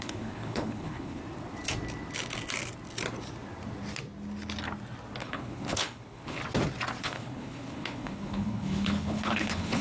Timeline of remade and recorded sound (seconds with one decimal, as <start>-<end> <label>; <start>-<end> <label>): 0.0-1.2 remade; 1.2-5.2 recorded; 5.2-6.4 remade; 6.4-7.0 recorded; 7.0-9.8 remade